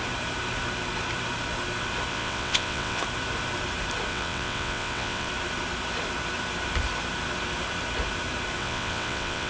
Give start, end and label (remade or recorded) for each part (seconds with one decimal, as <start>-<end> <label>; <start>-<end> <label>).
0.0-2.1 recorded; 2.1-3.0 remade; 3.0-4.1 recorded; 4.1-5.3 remade; 5.3-8.6 recorded; 8.6-9.5 remade

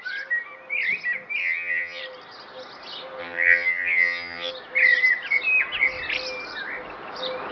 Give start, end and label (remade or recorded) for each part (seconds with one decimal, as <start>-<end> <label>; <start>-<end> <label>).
0.0-1.4 recorded; 1.4-2.0 remade; 2.0-3.2 recorded; 3.2-4.5 remade; 4.5-7.5 recorded

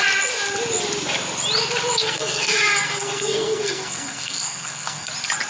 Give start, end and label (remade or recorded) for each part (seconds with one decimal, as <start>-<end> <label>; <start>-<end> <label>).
0.0-2.0 recorded; 2.0-5.1 remade; 5.1-5.5 recorded

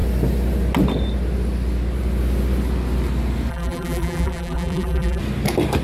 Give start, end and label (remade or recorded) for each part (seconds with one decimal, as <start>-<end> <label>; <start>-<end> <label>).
0.0-3.5 recorded; 3.5-5.2 remade; 5.2-5.8 recorded

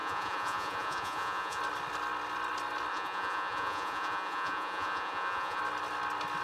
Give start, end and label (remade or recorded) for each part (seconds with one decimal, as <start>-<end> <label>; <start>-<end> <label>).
0.0-1.6 remade; 1.6-2.9 recorded; 2.9-5.6 remade; 5.6-6.4 recorded

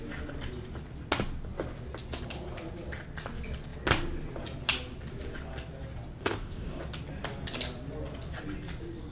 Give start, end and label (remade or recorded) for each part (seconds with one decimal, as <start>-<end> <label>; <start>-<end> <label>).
0.0-6.2 recorded; 6.2-6.8 remade; 6.8-9.1 recorded

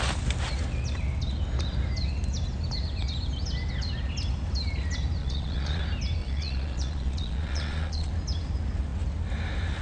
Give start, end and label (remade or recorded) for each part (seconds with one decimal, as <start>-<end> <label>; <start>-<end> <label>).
0.0-5.2 recorded; 5.2-5.8 remade; 5.8-6.2 recorded; 6.2-8.1 remade; 8.1-9.8 recorded

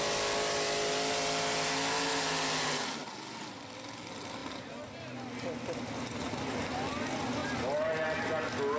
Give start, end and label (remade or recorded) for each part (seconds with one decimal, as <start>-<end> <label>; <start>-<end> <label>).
0.0-8.8 recorded